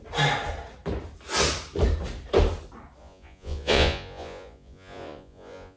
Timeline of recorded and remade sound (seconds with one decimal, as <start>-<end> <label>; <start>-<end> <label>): 0.0-3.0 recorded; 3.0-5.8 remade